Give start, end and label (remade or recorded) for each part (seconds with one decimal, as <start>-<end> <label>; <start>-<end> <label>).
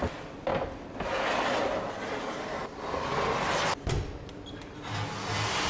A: 0.0-5.7 recorded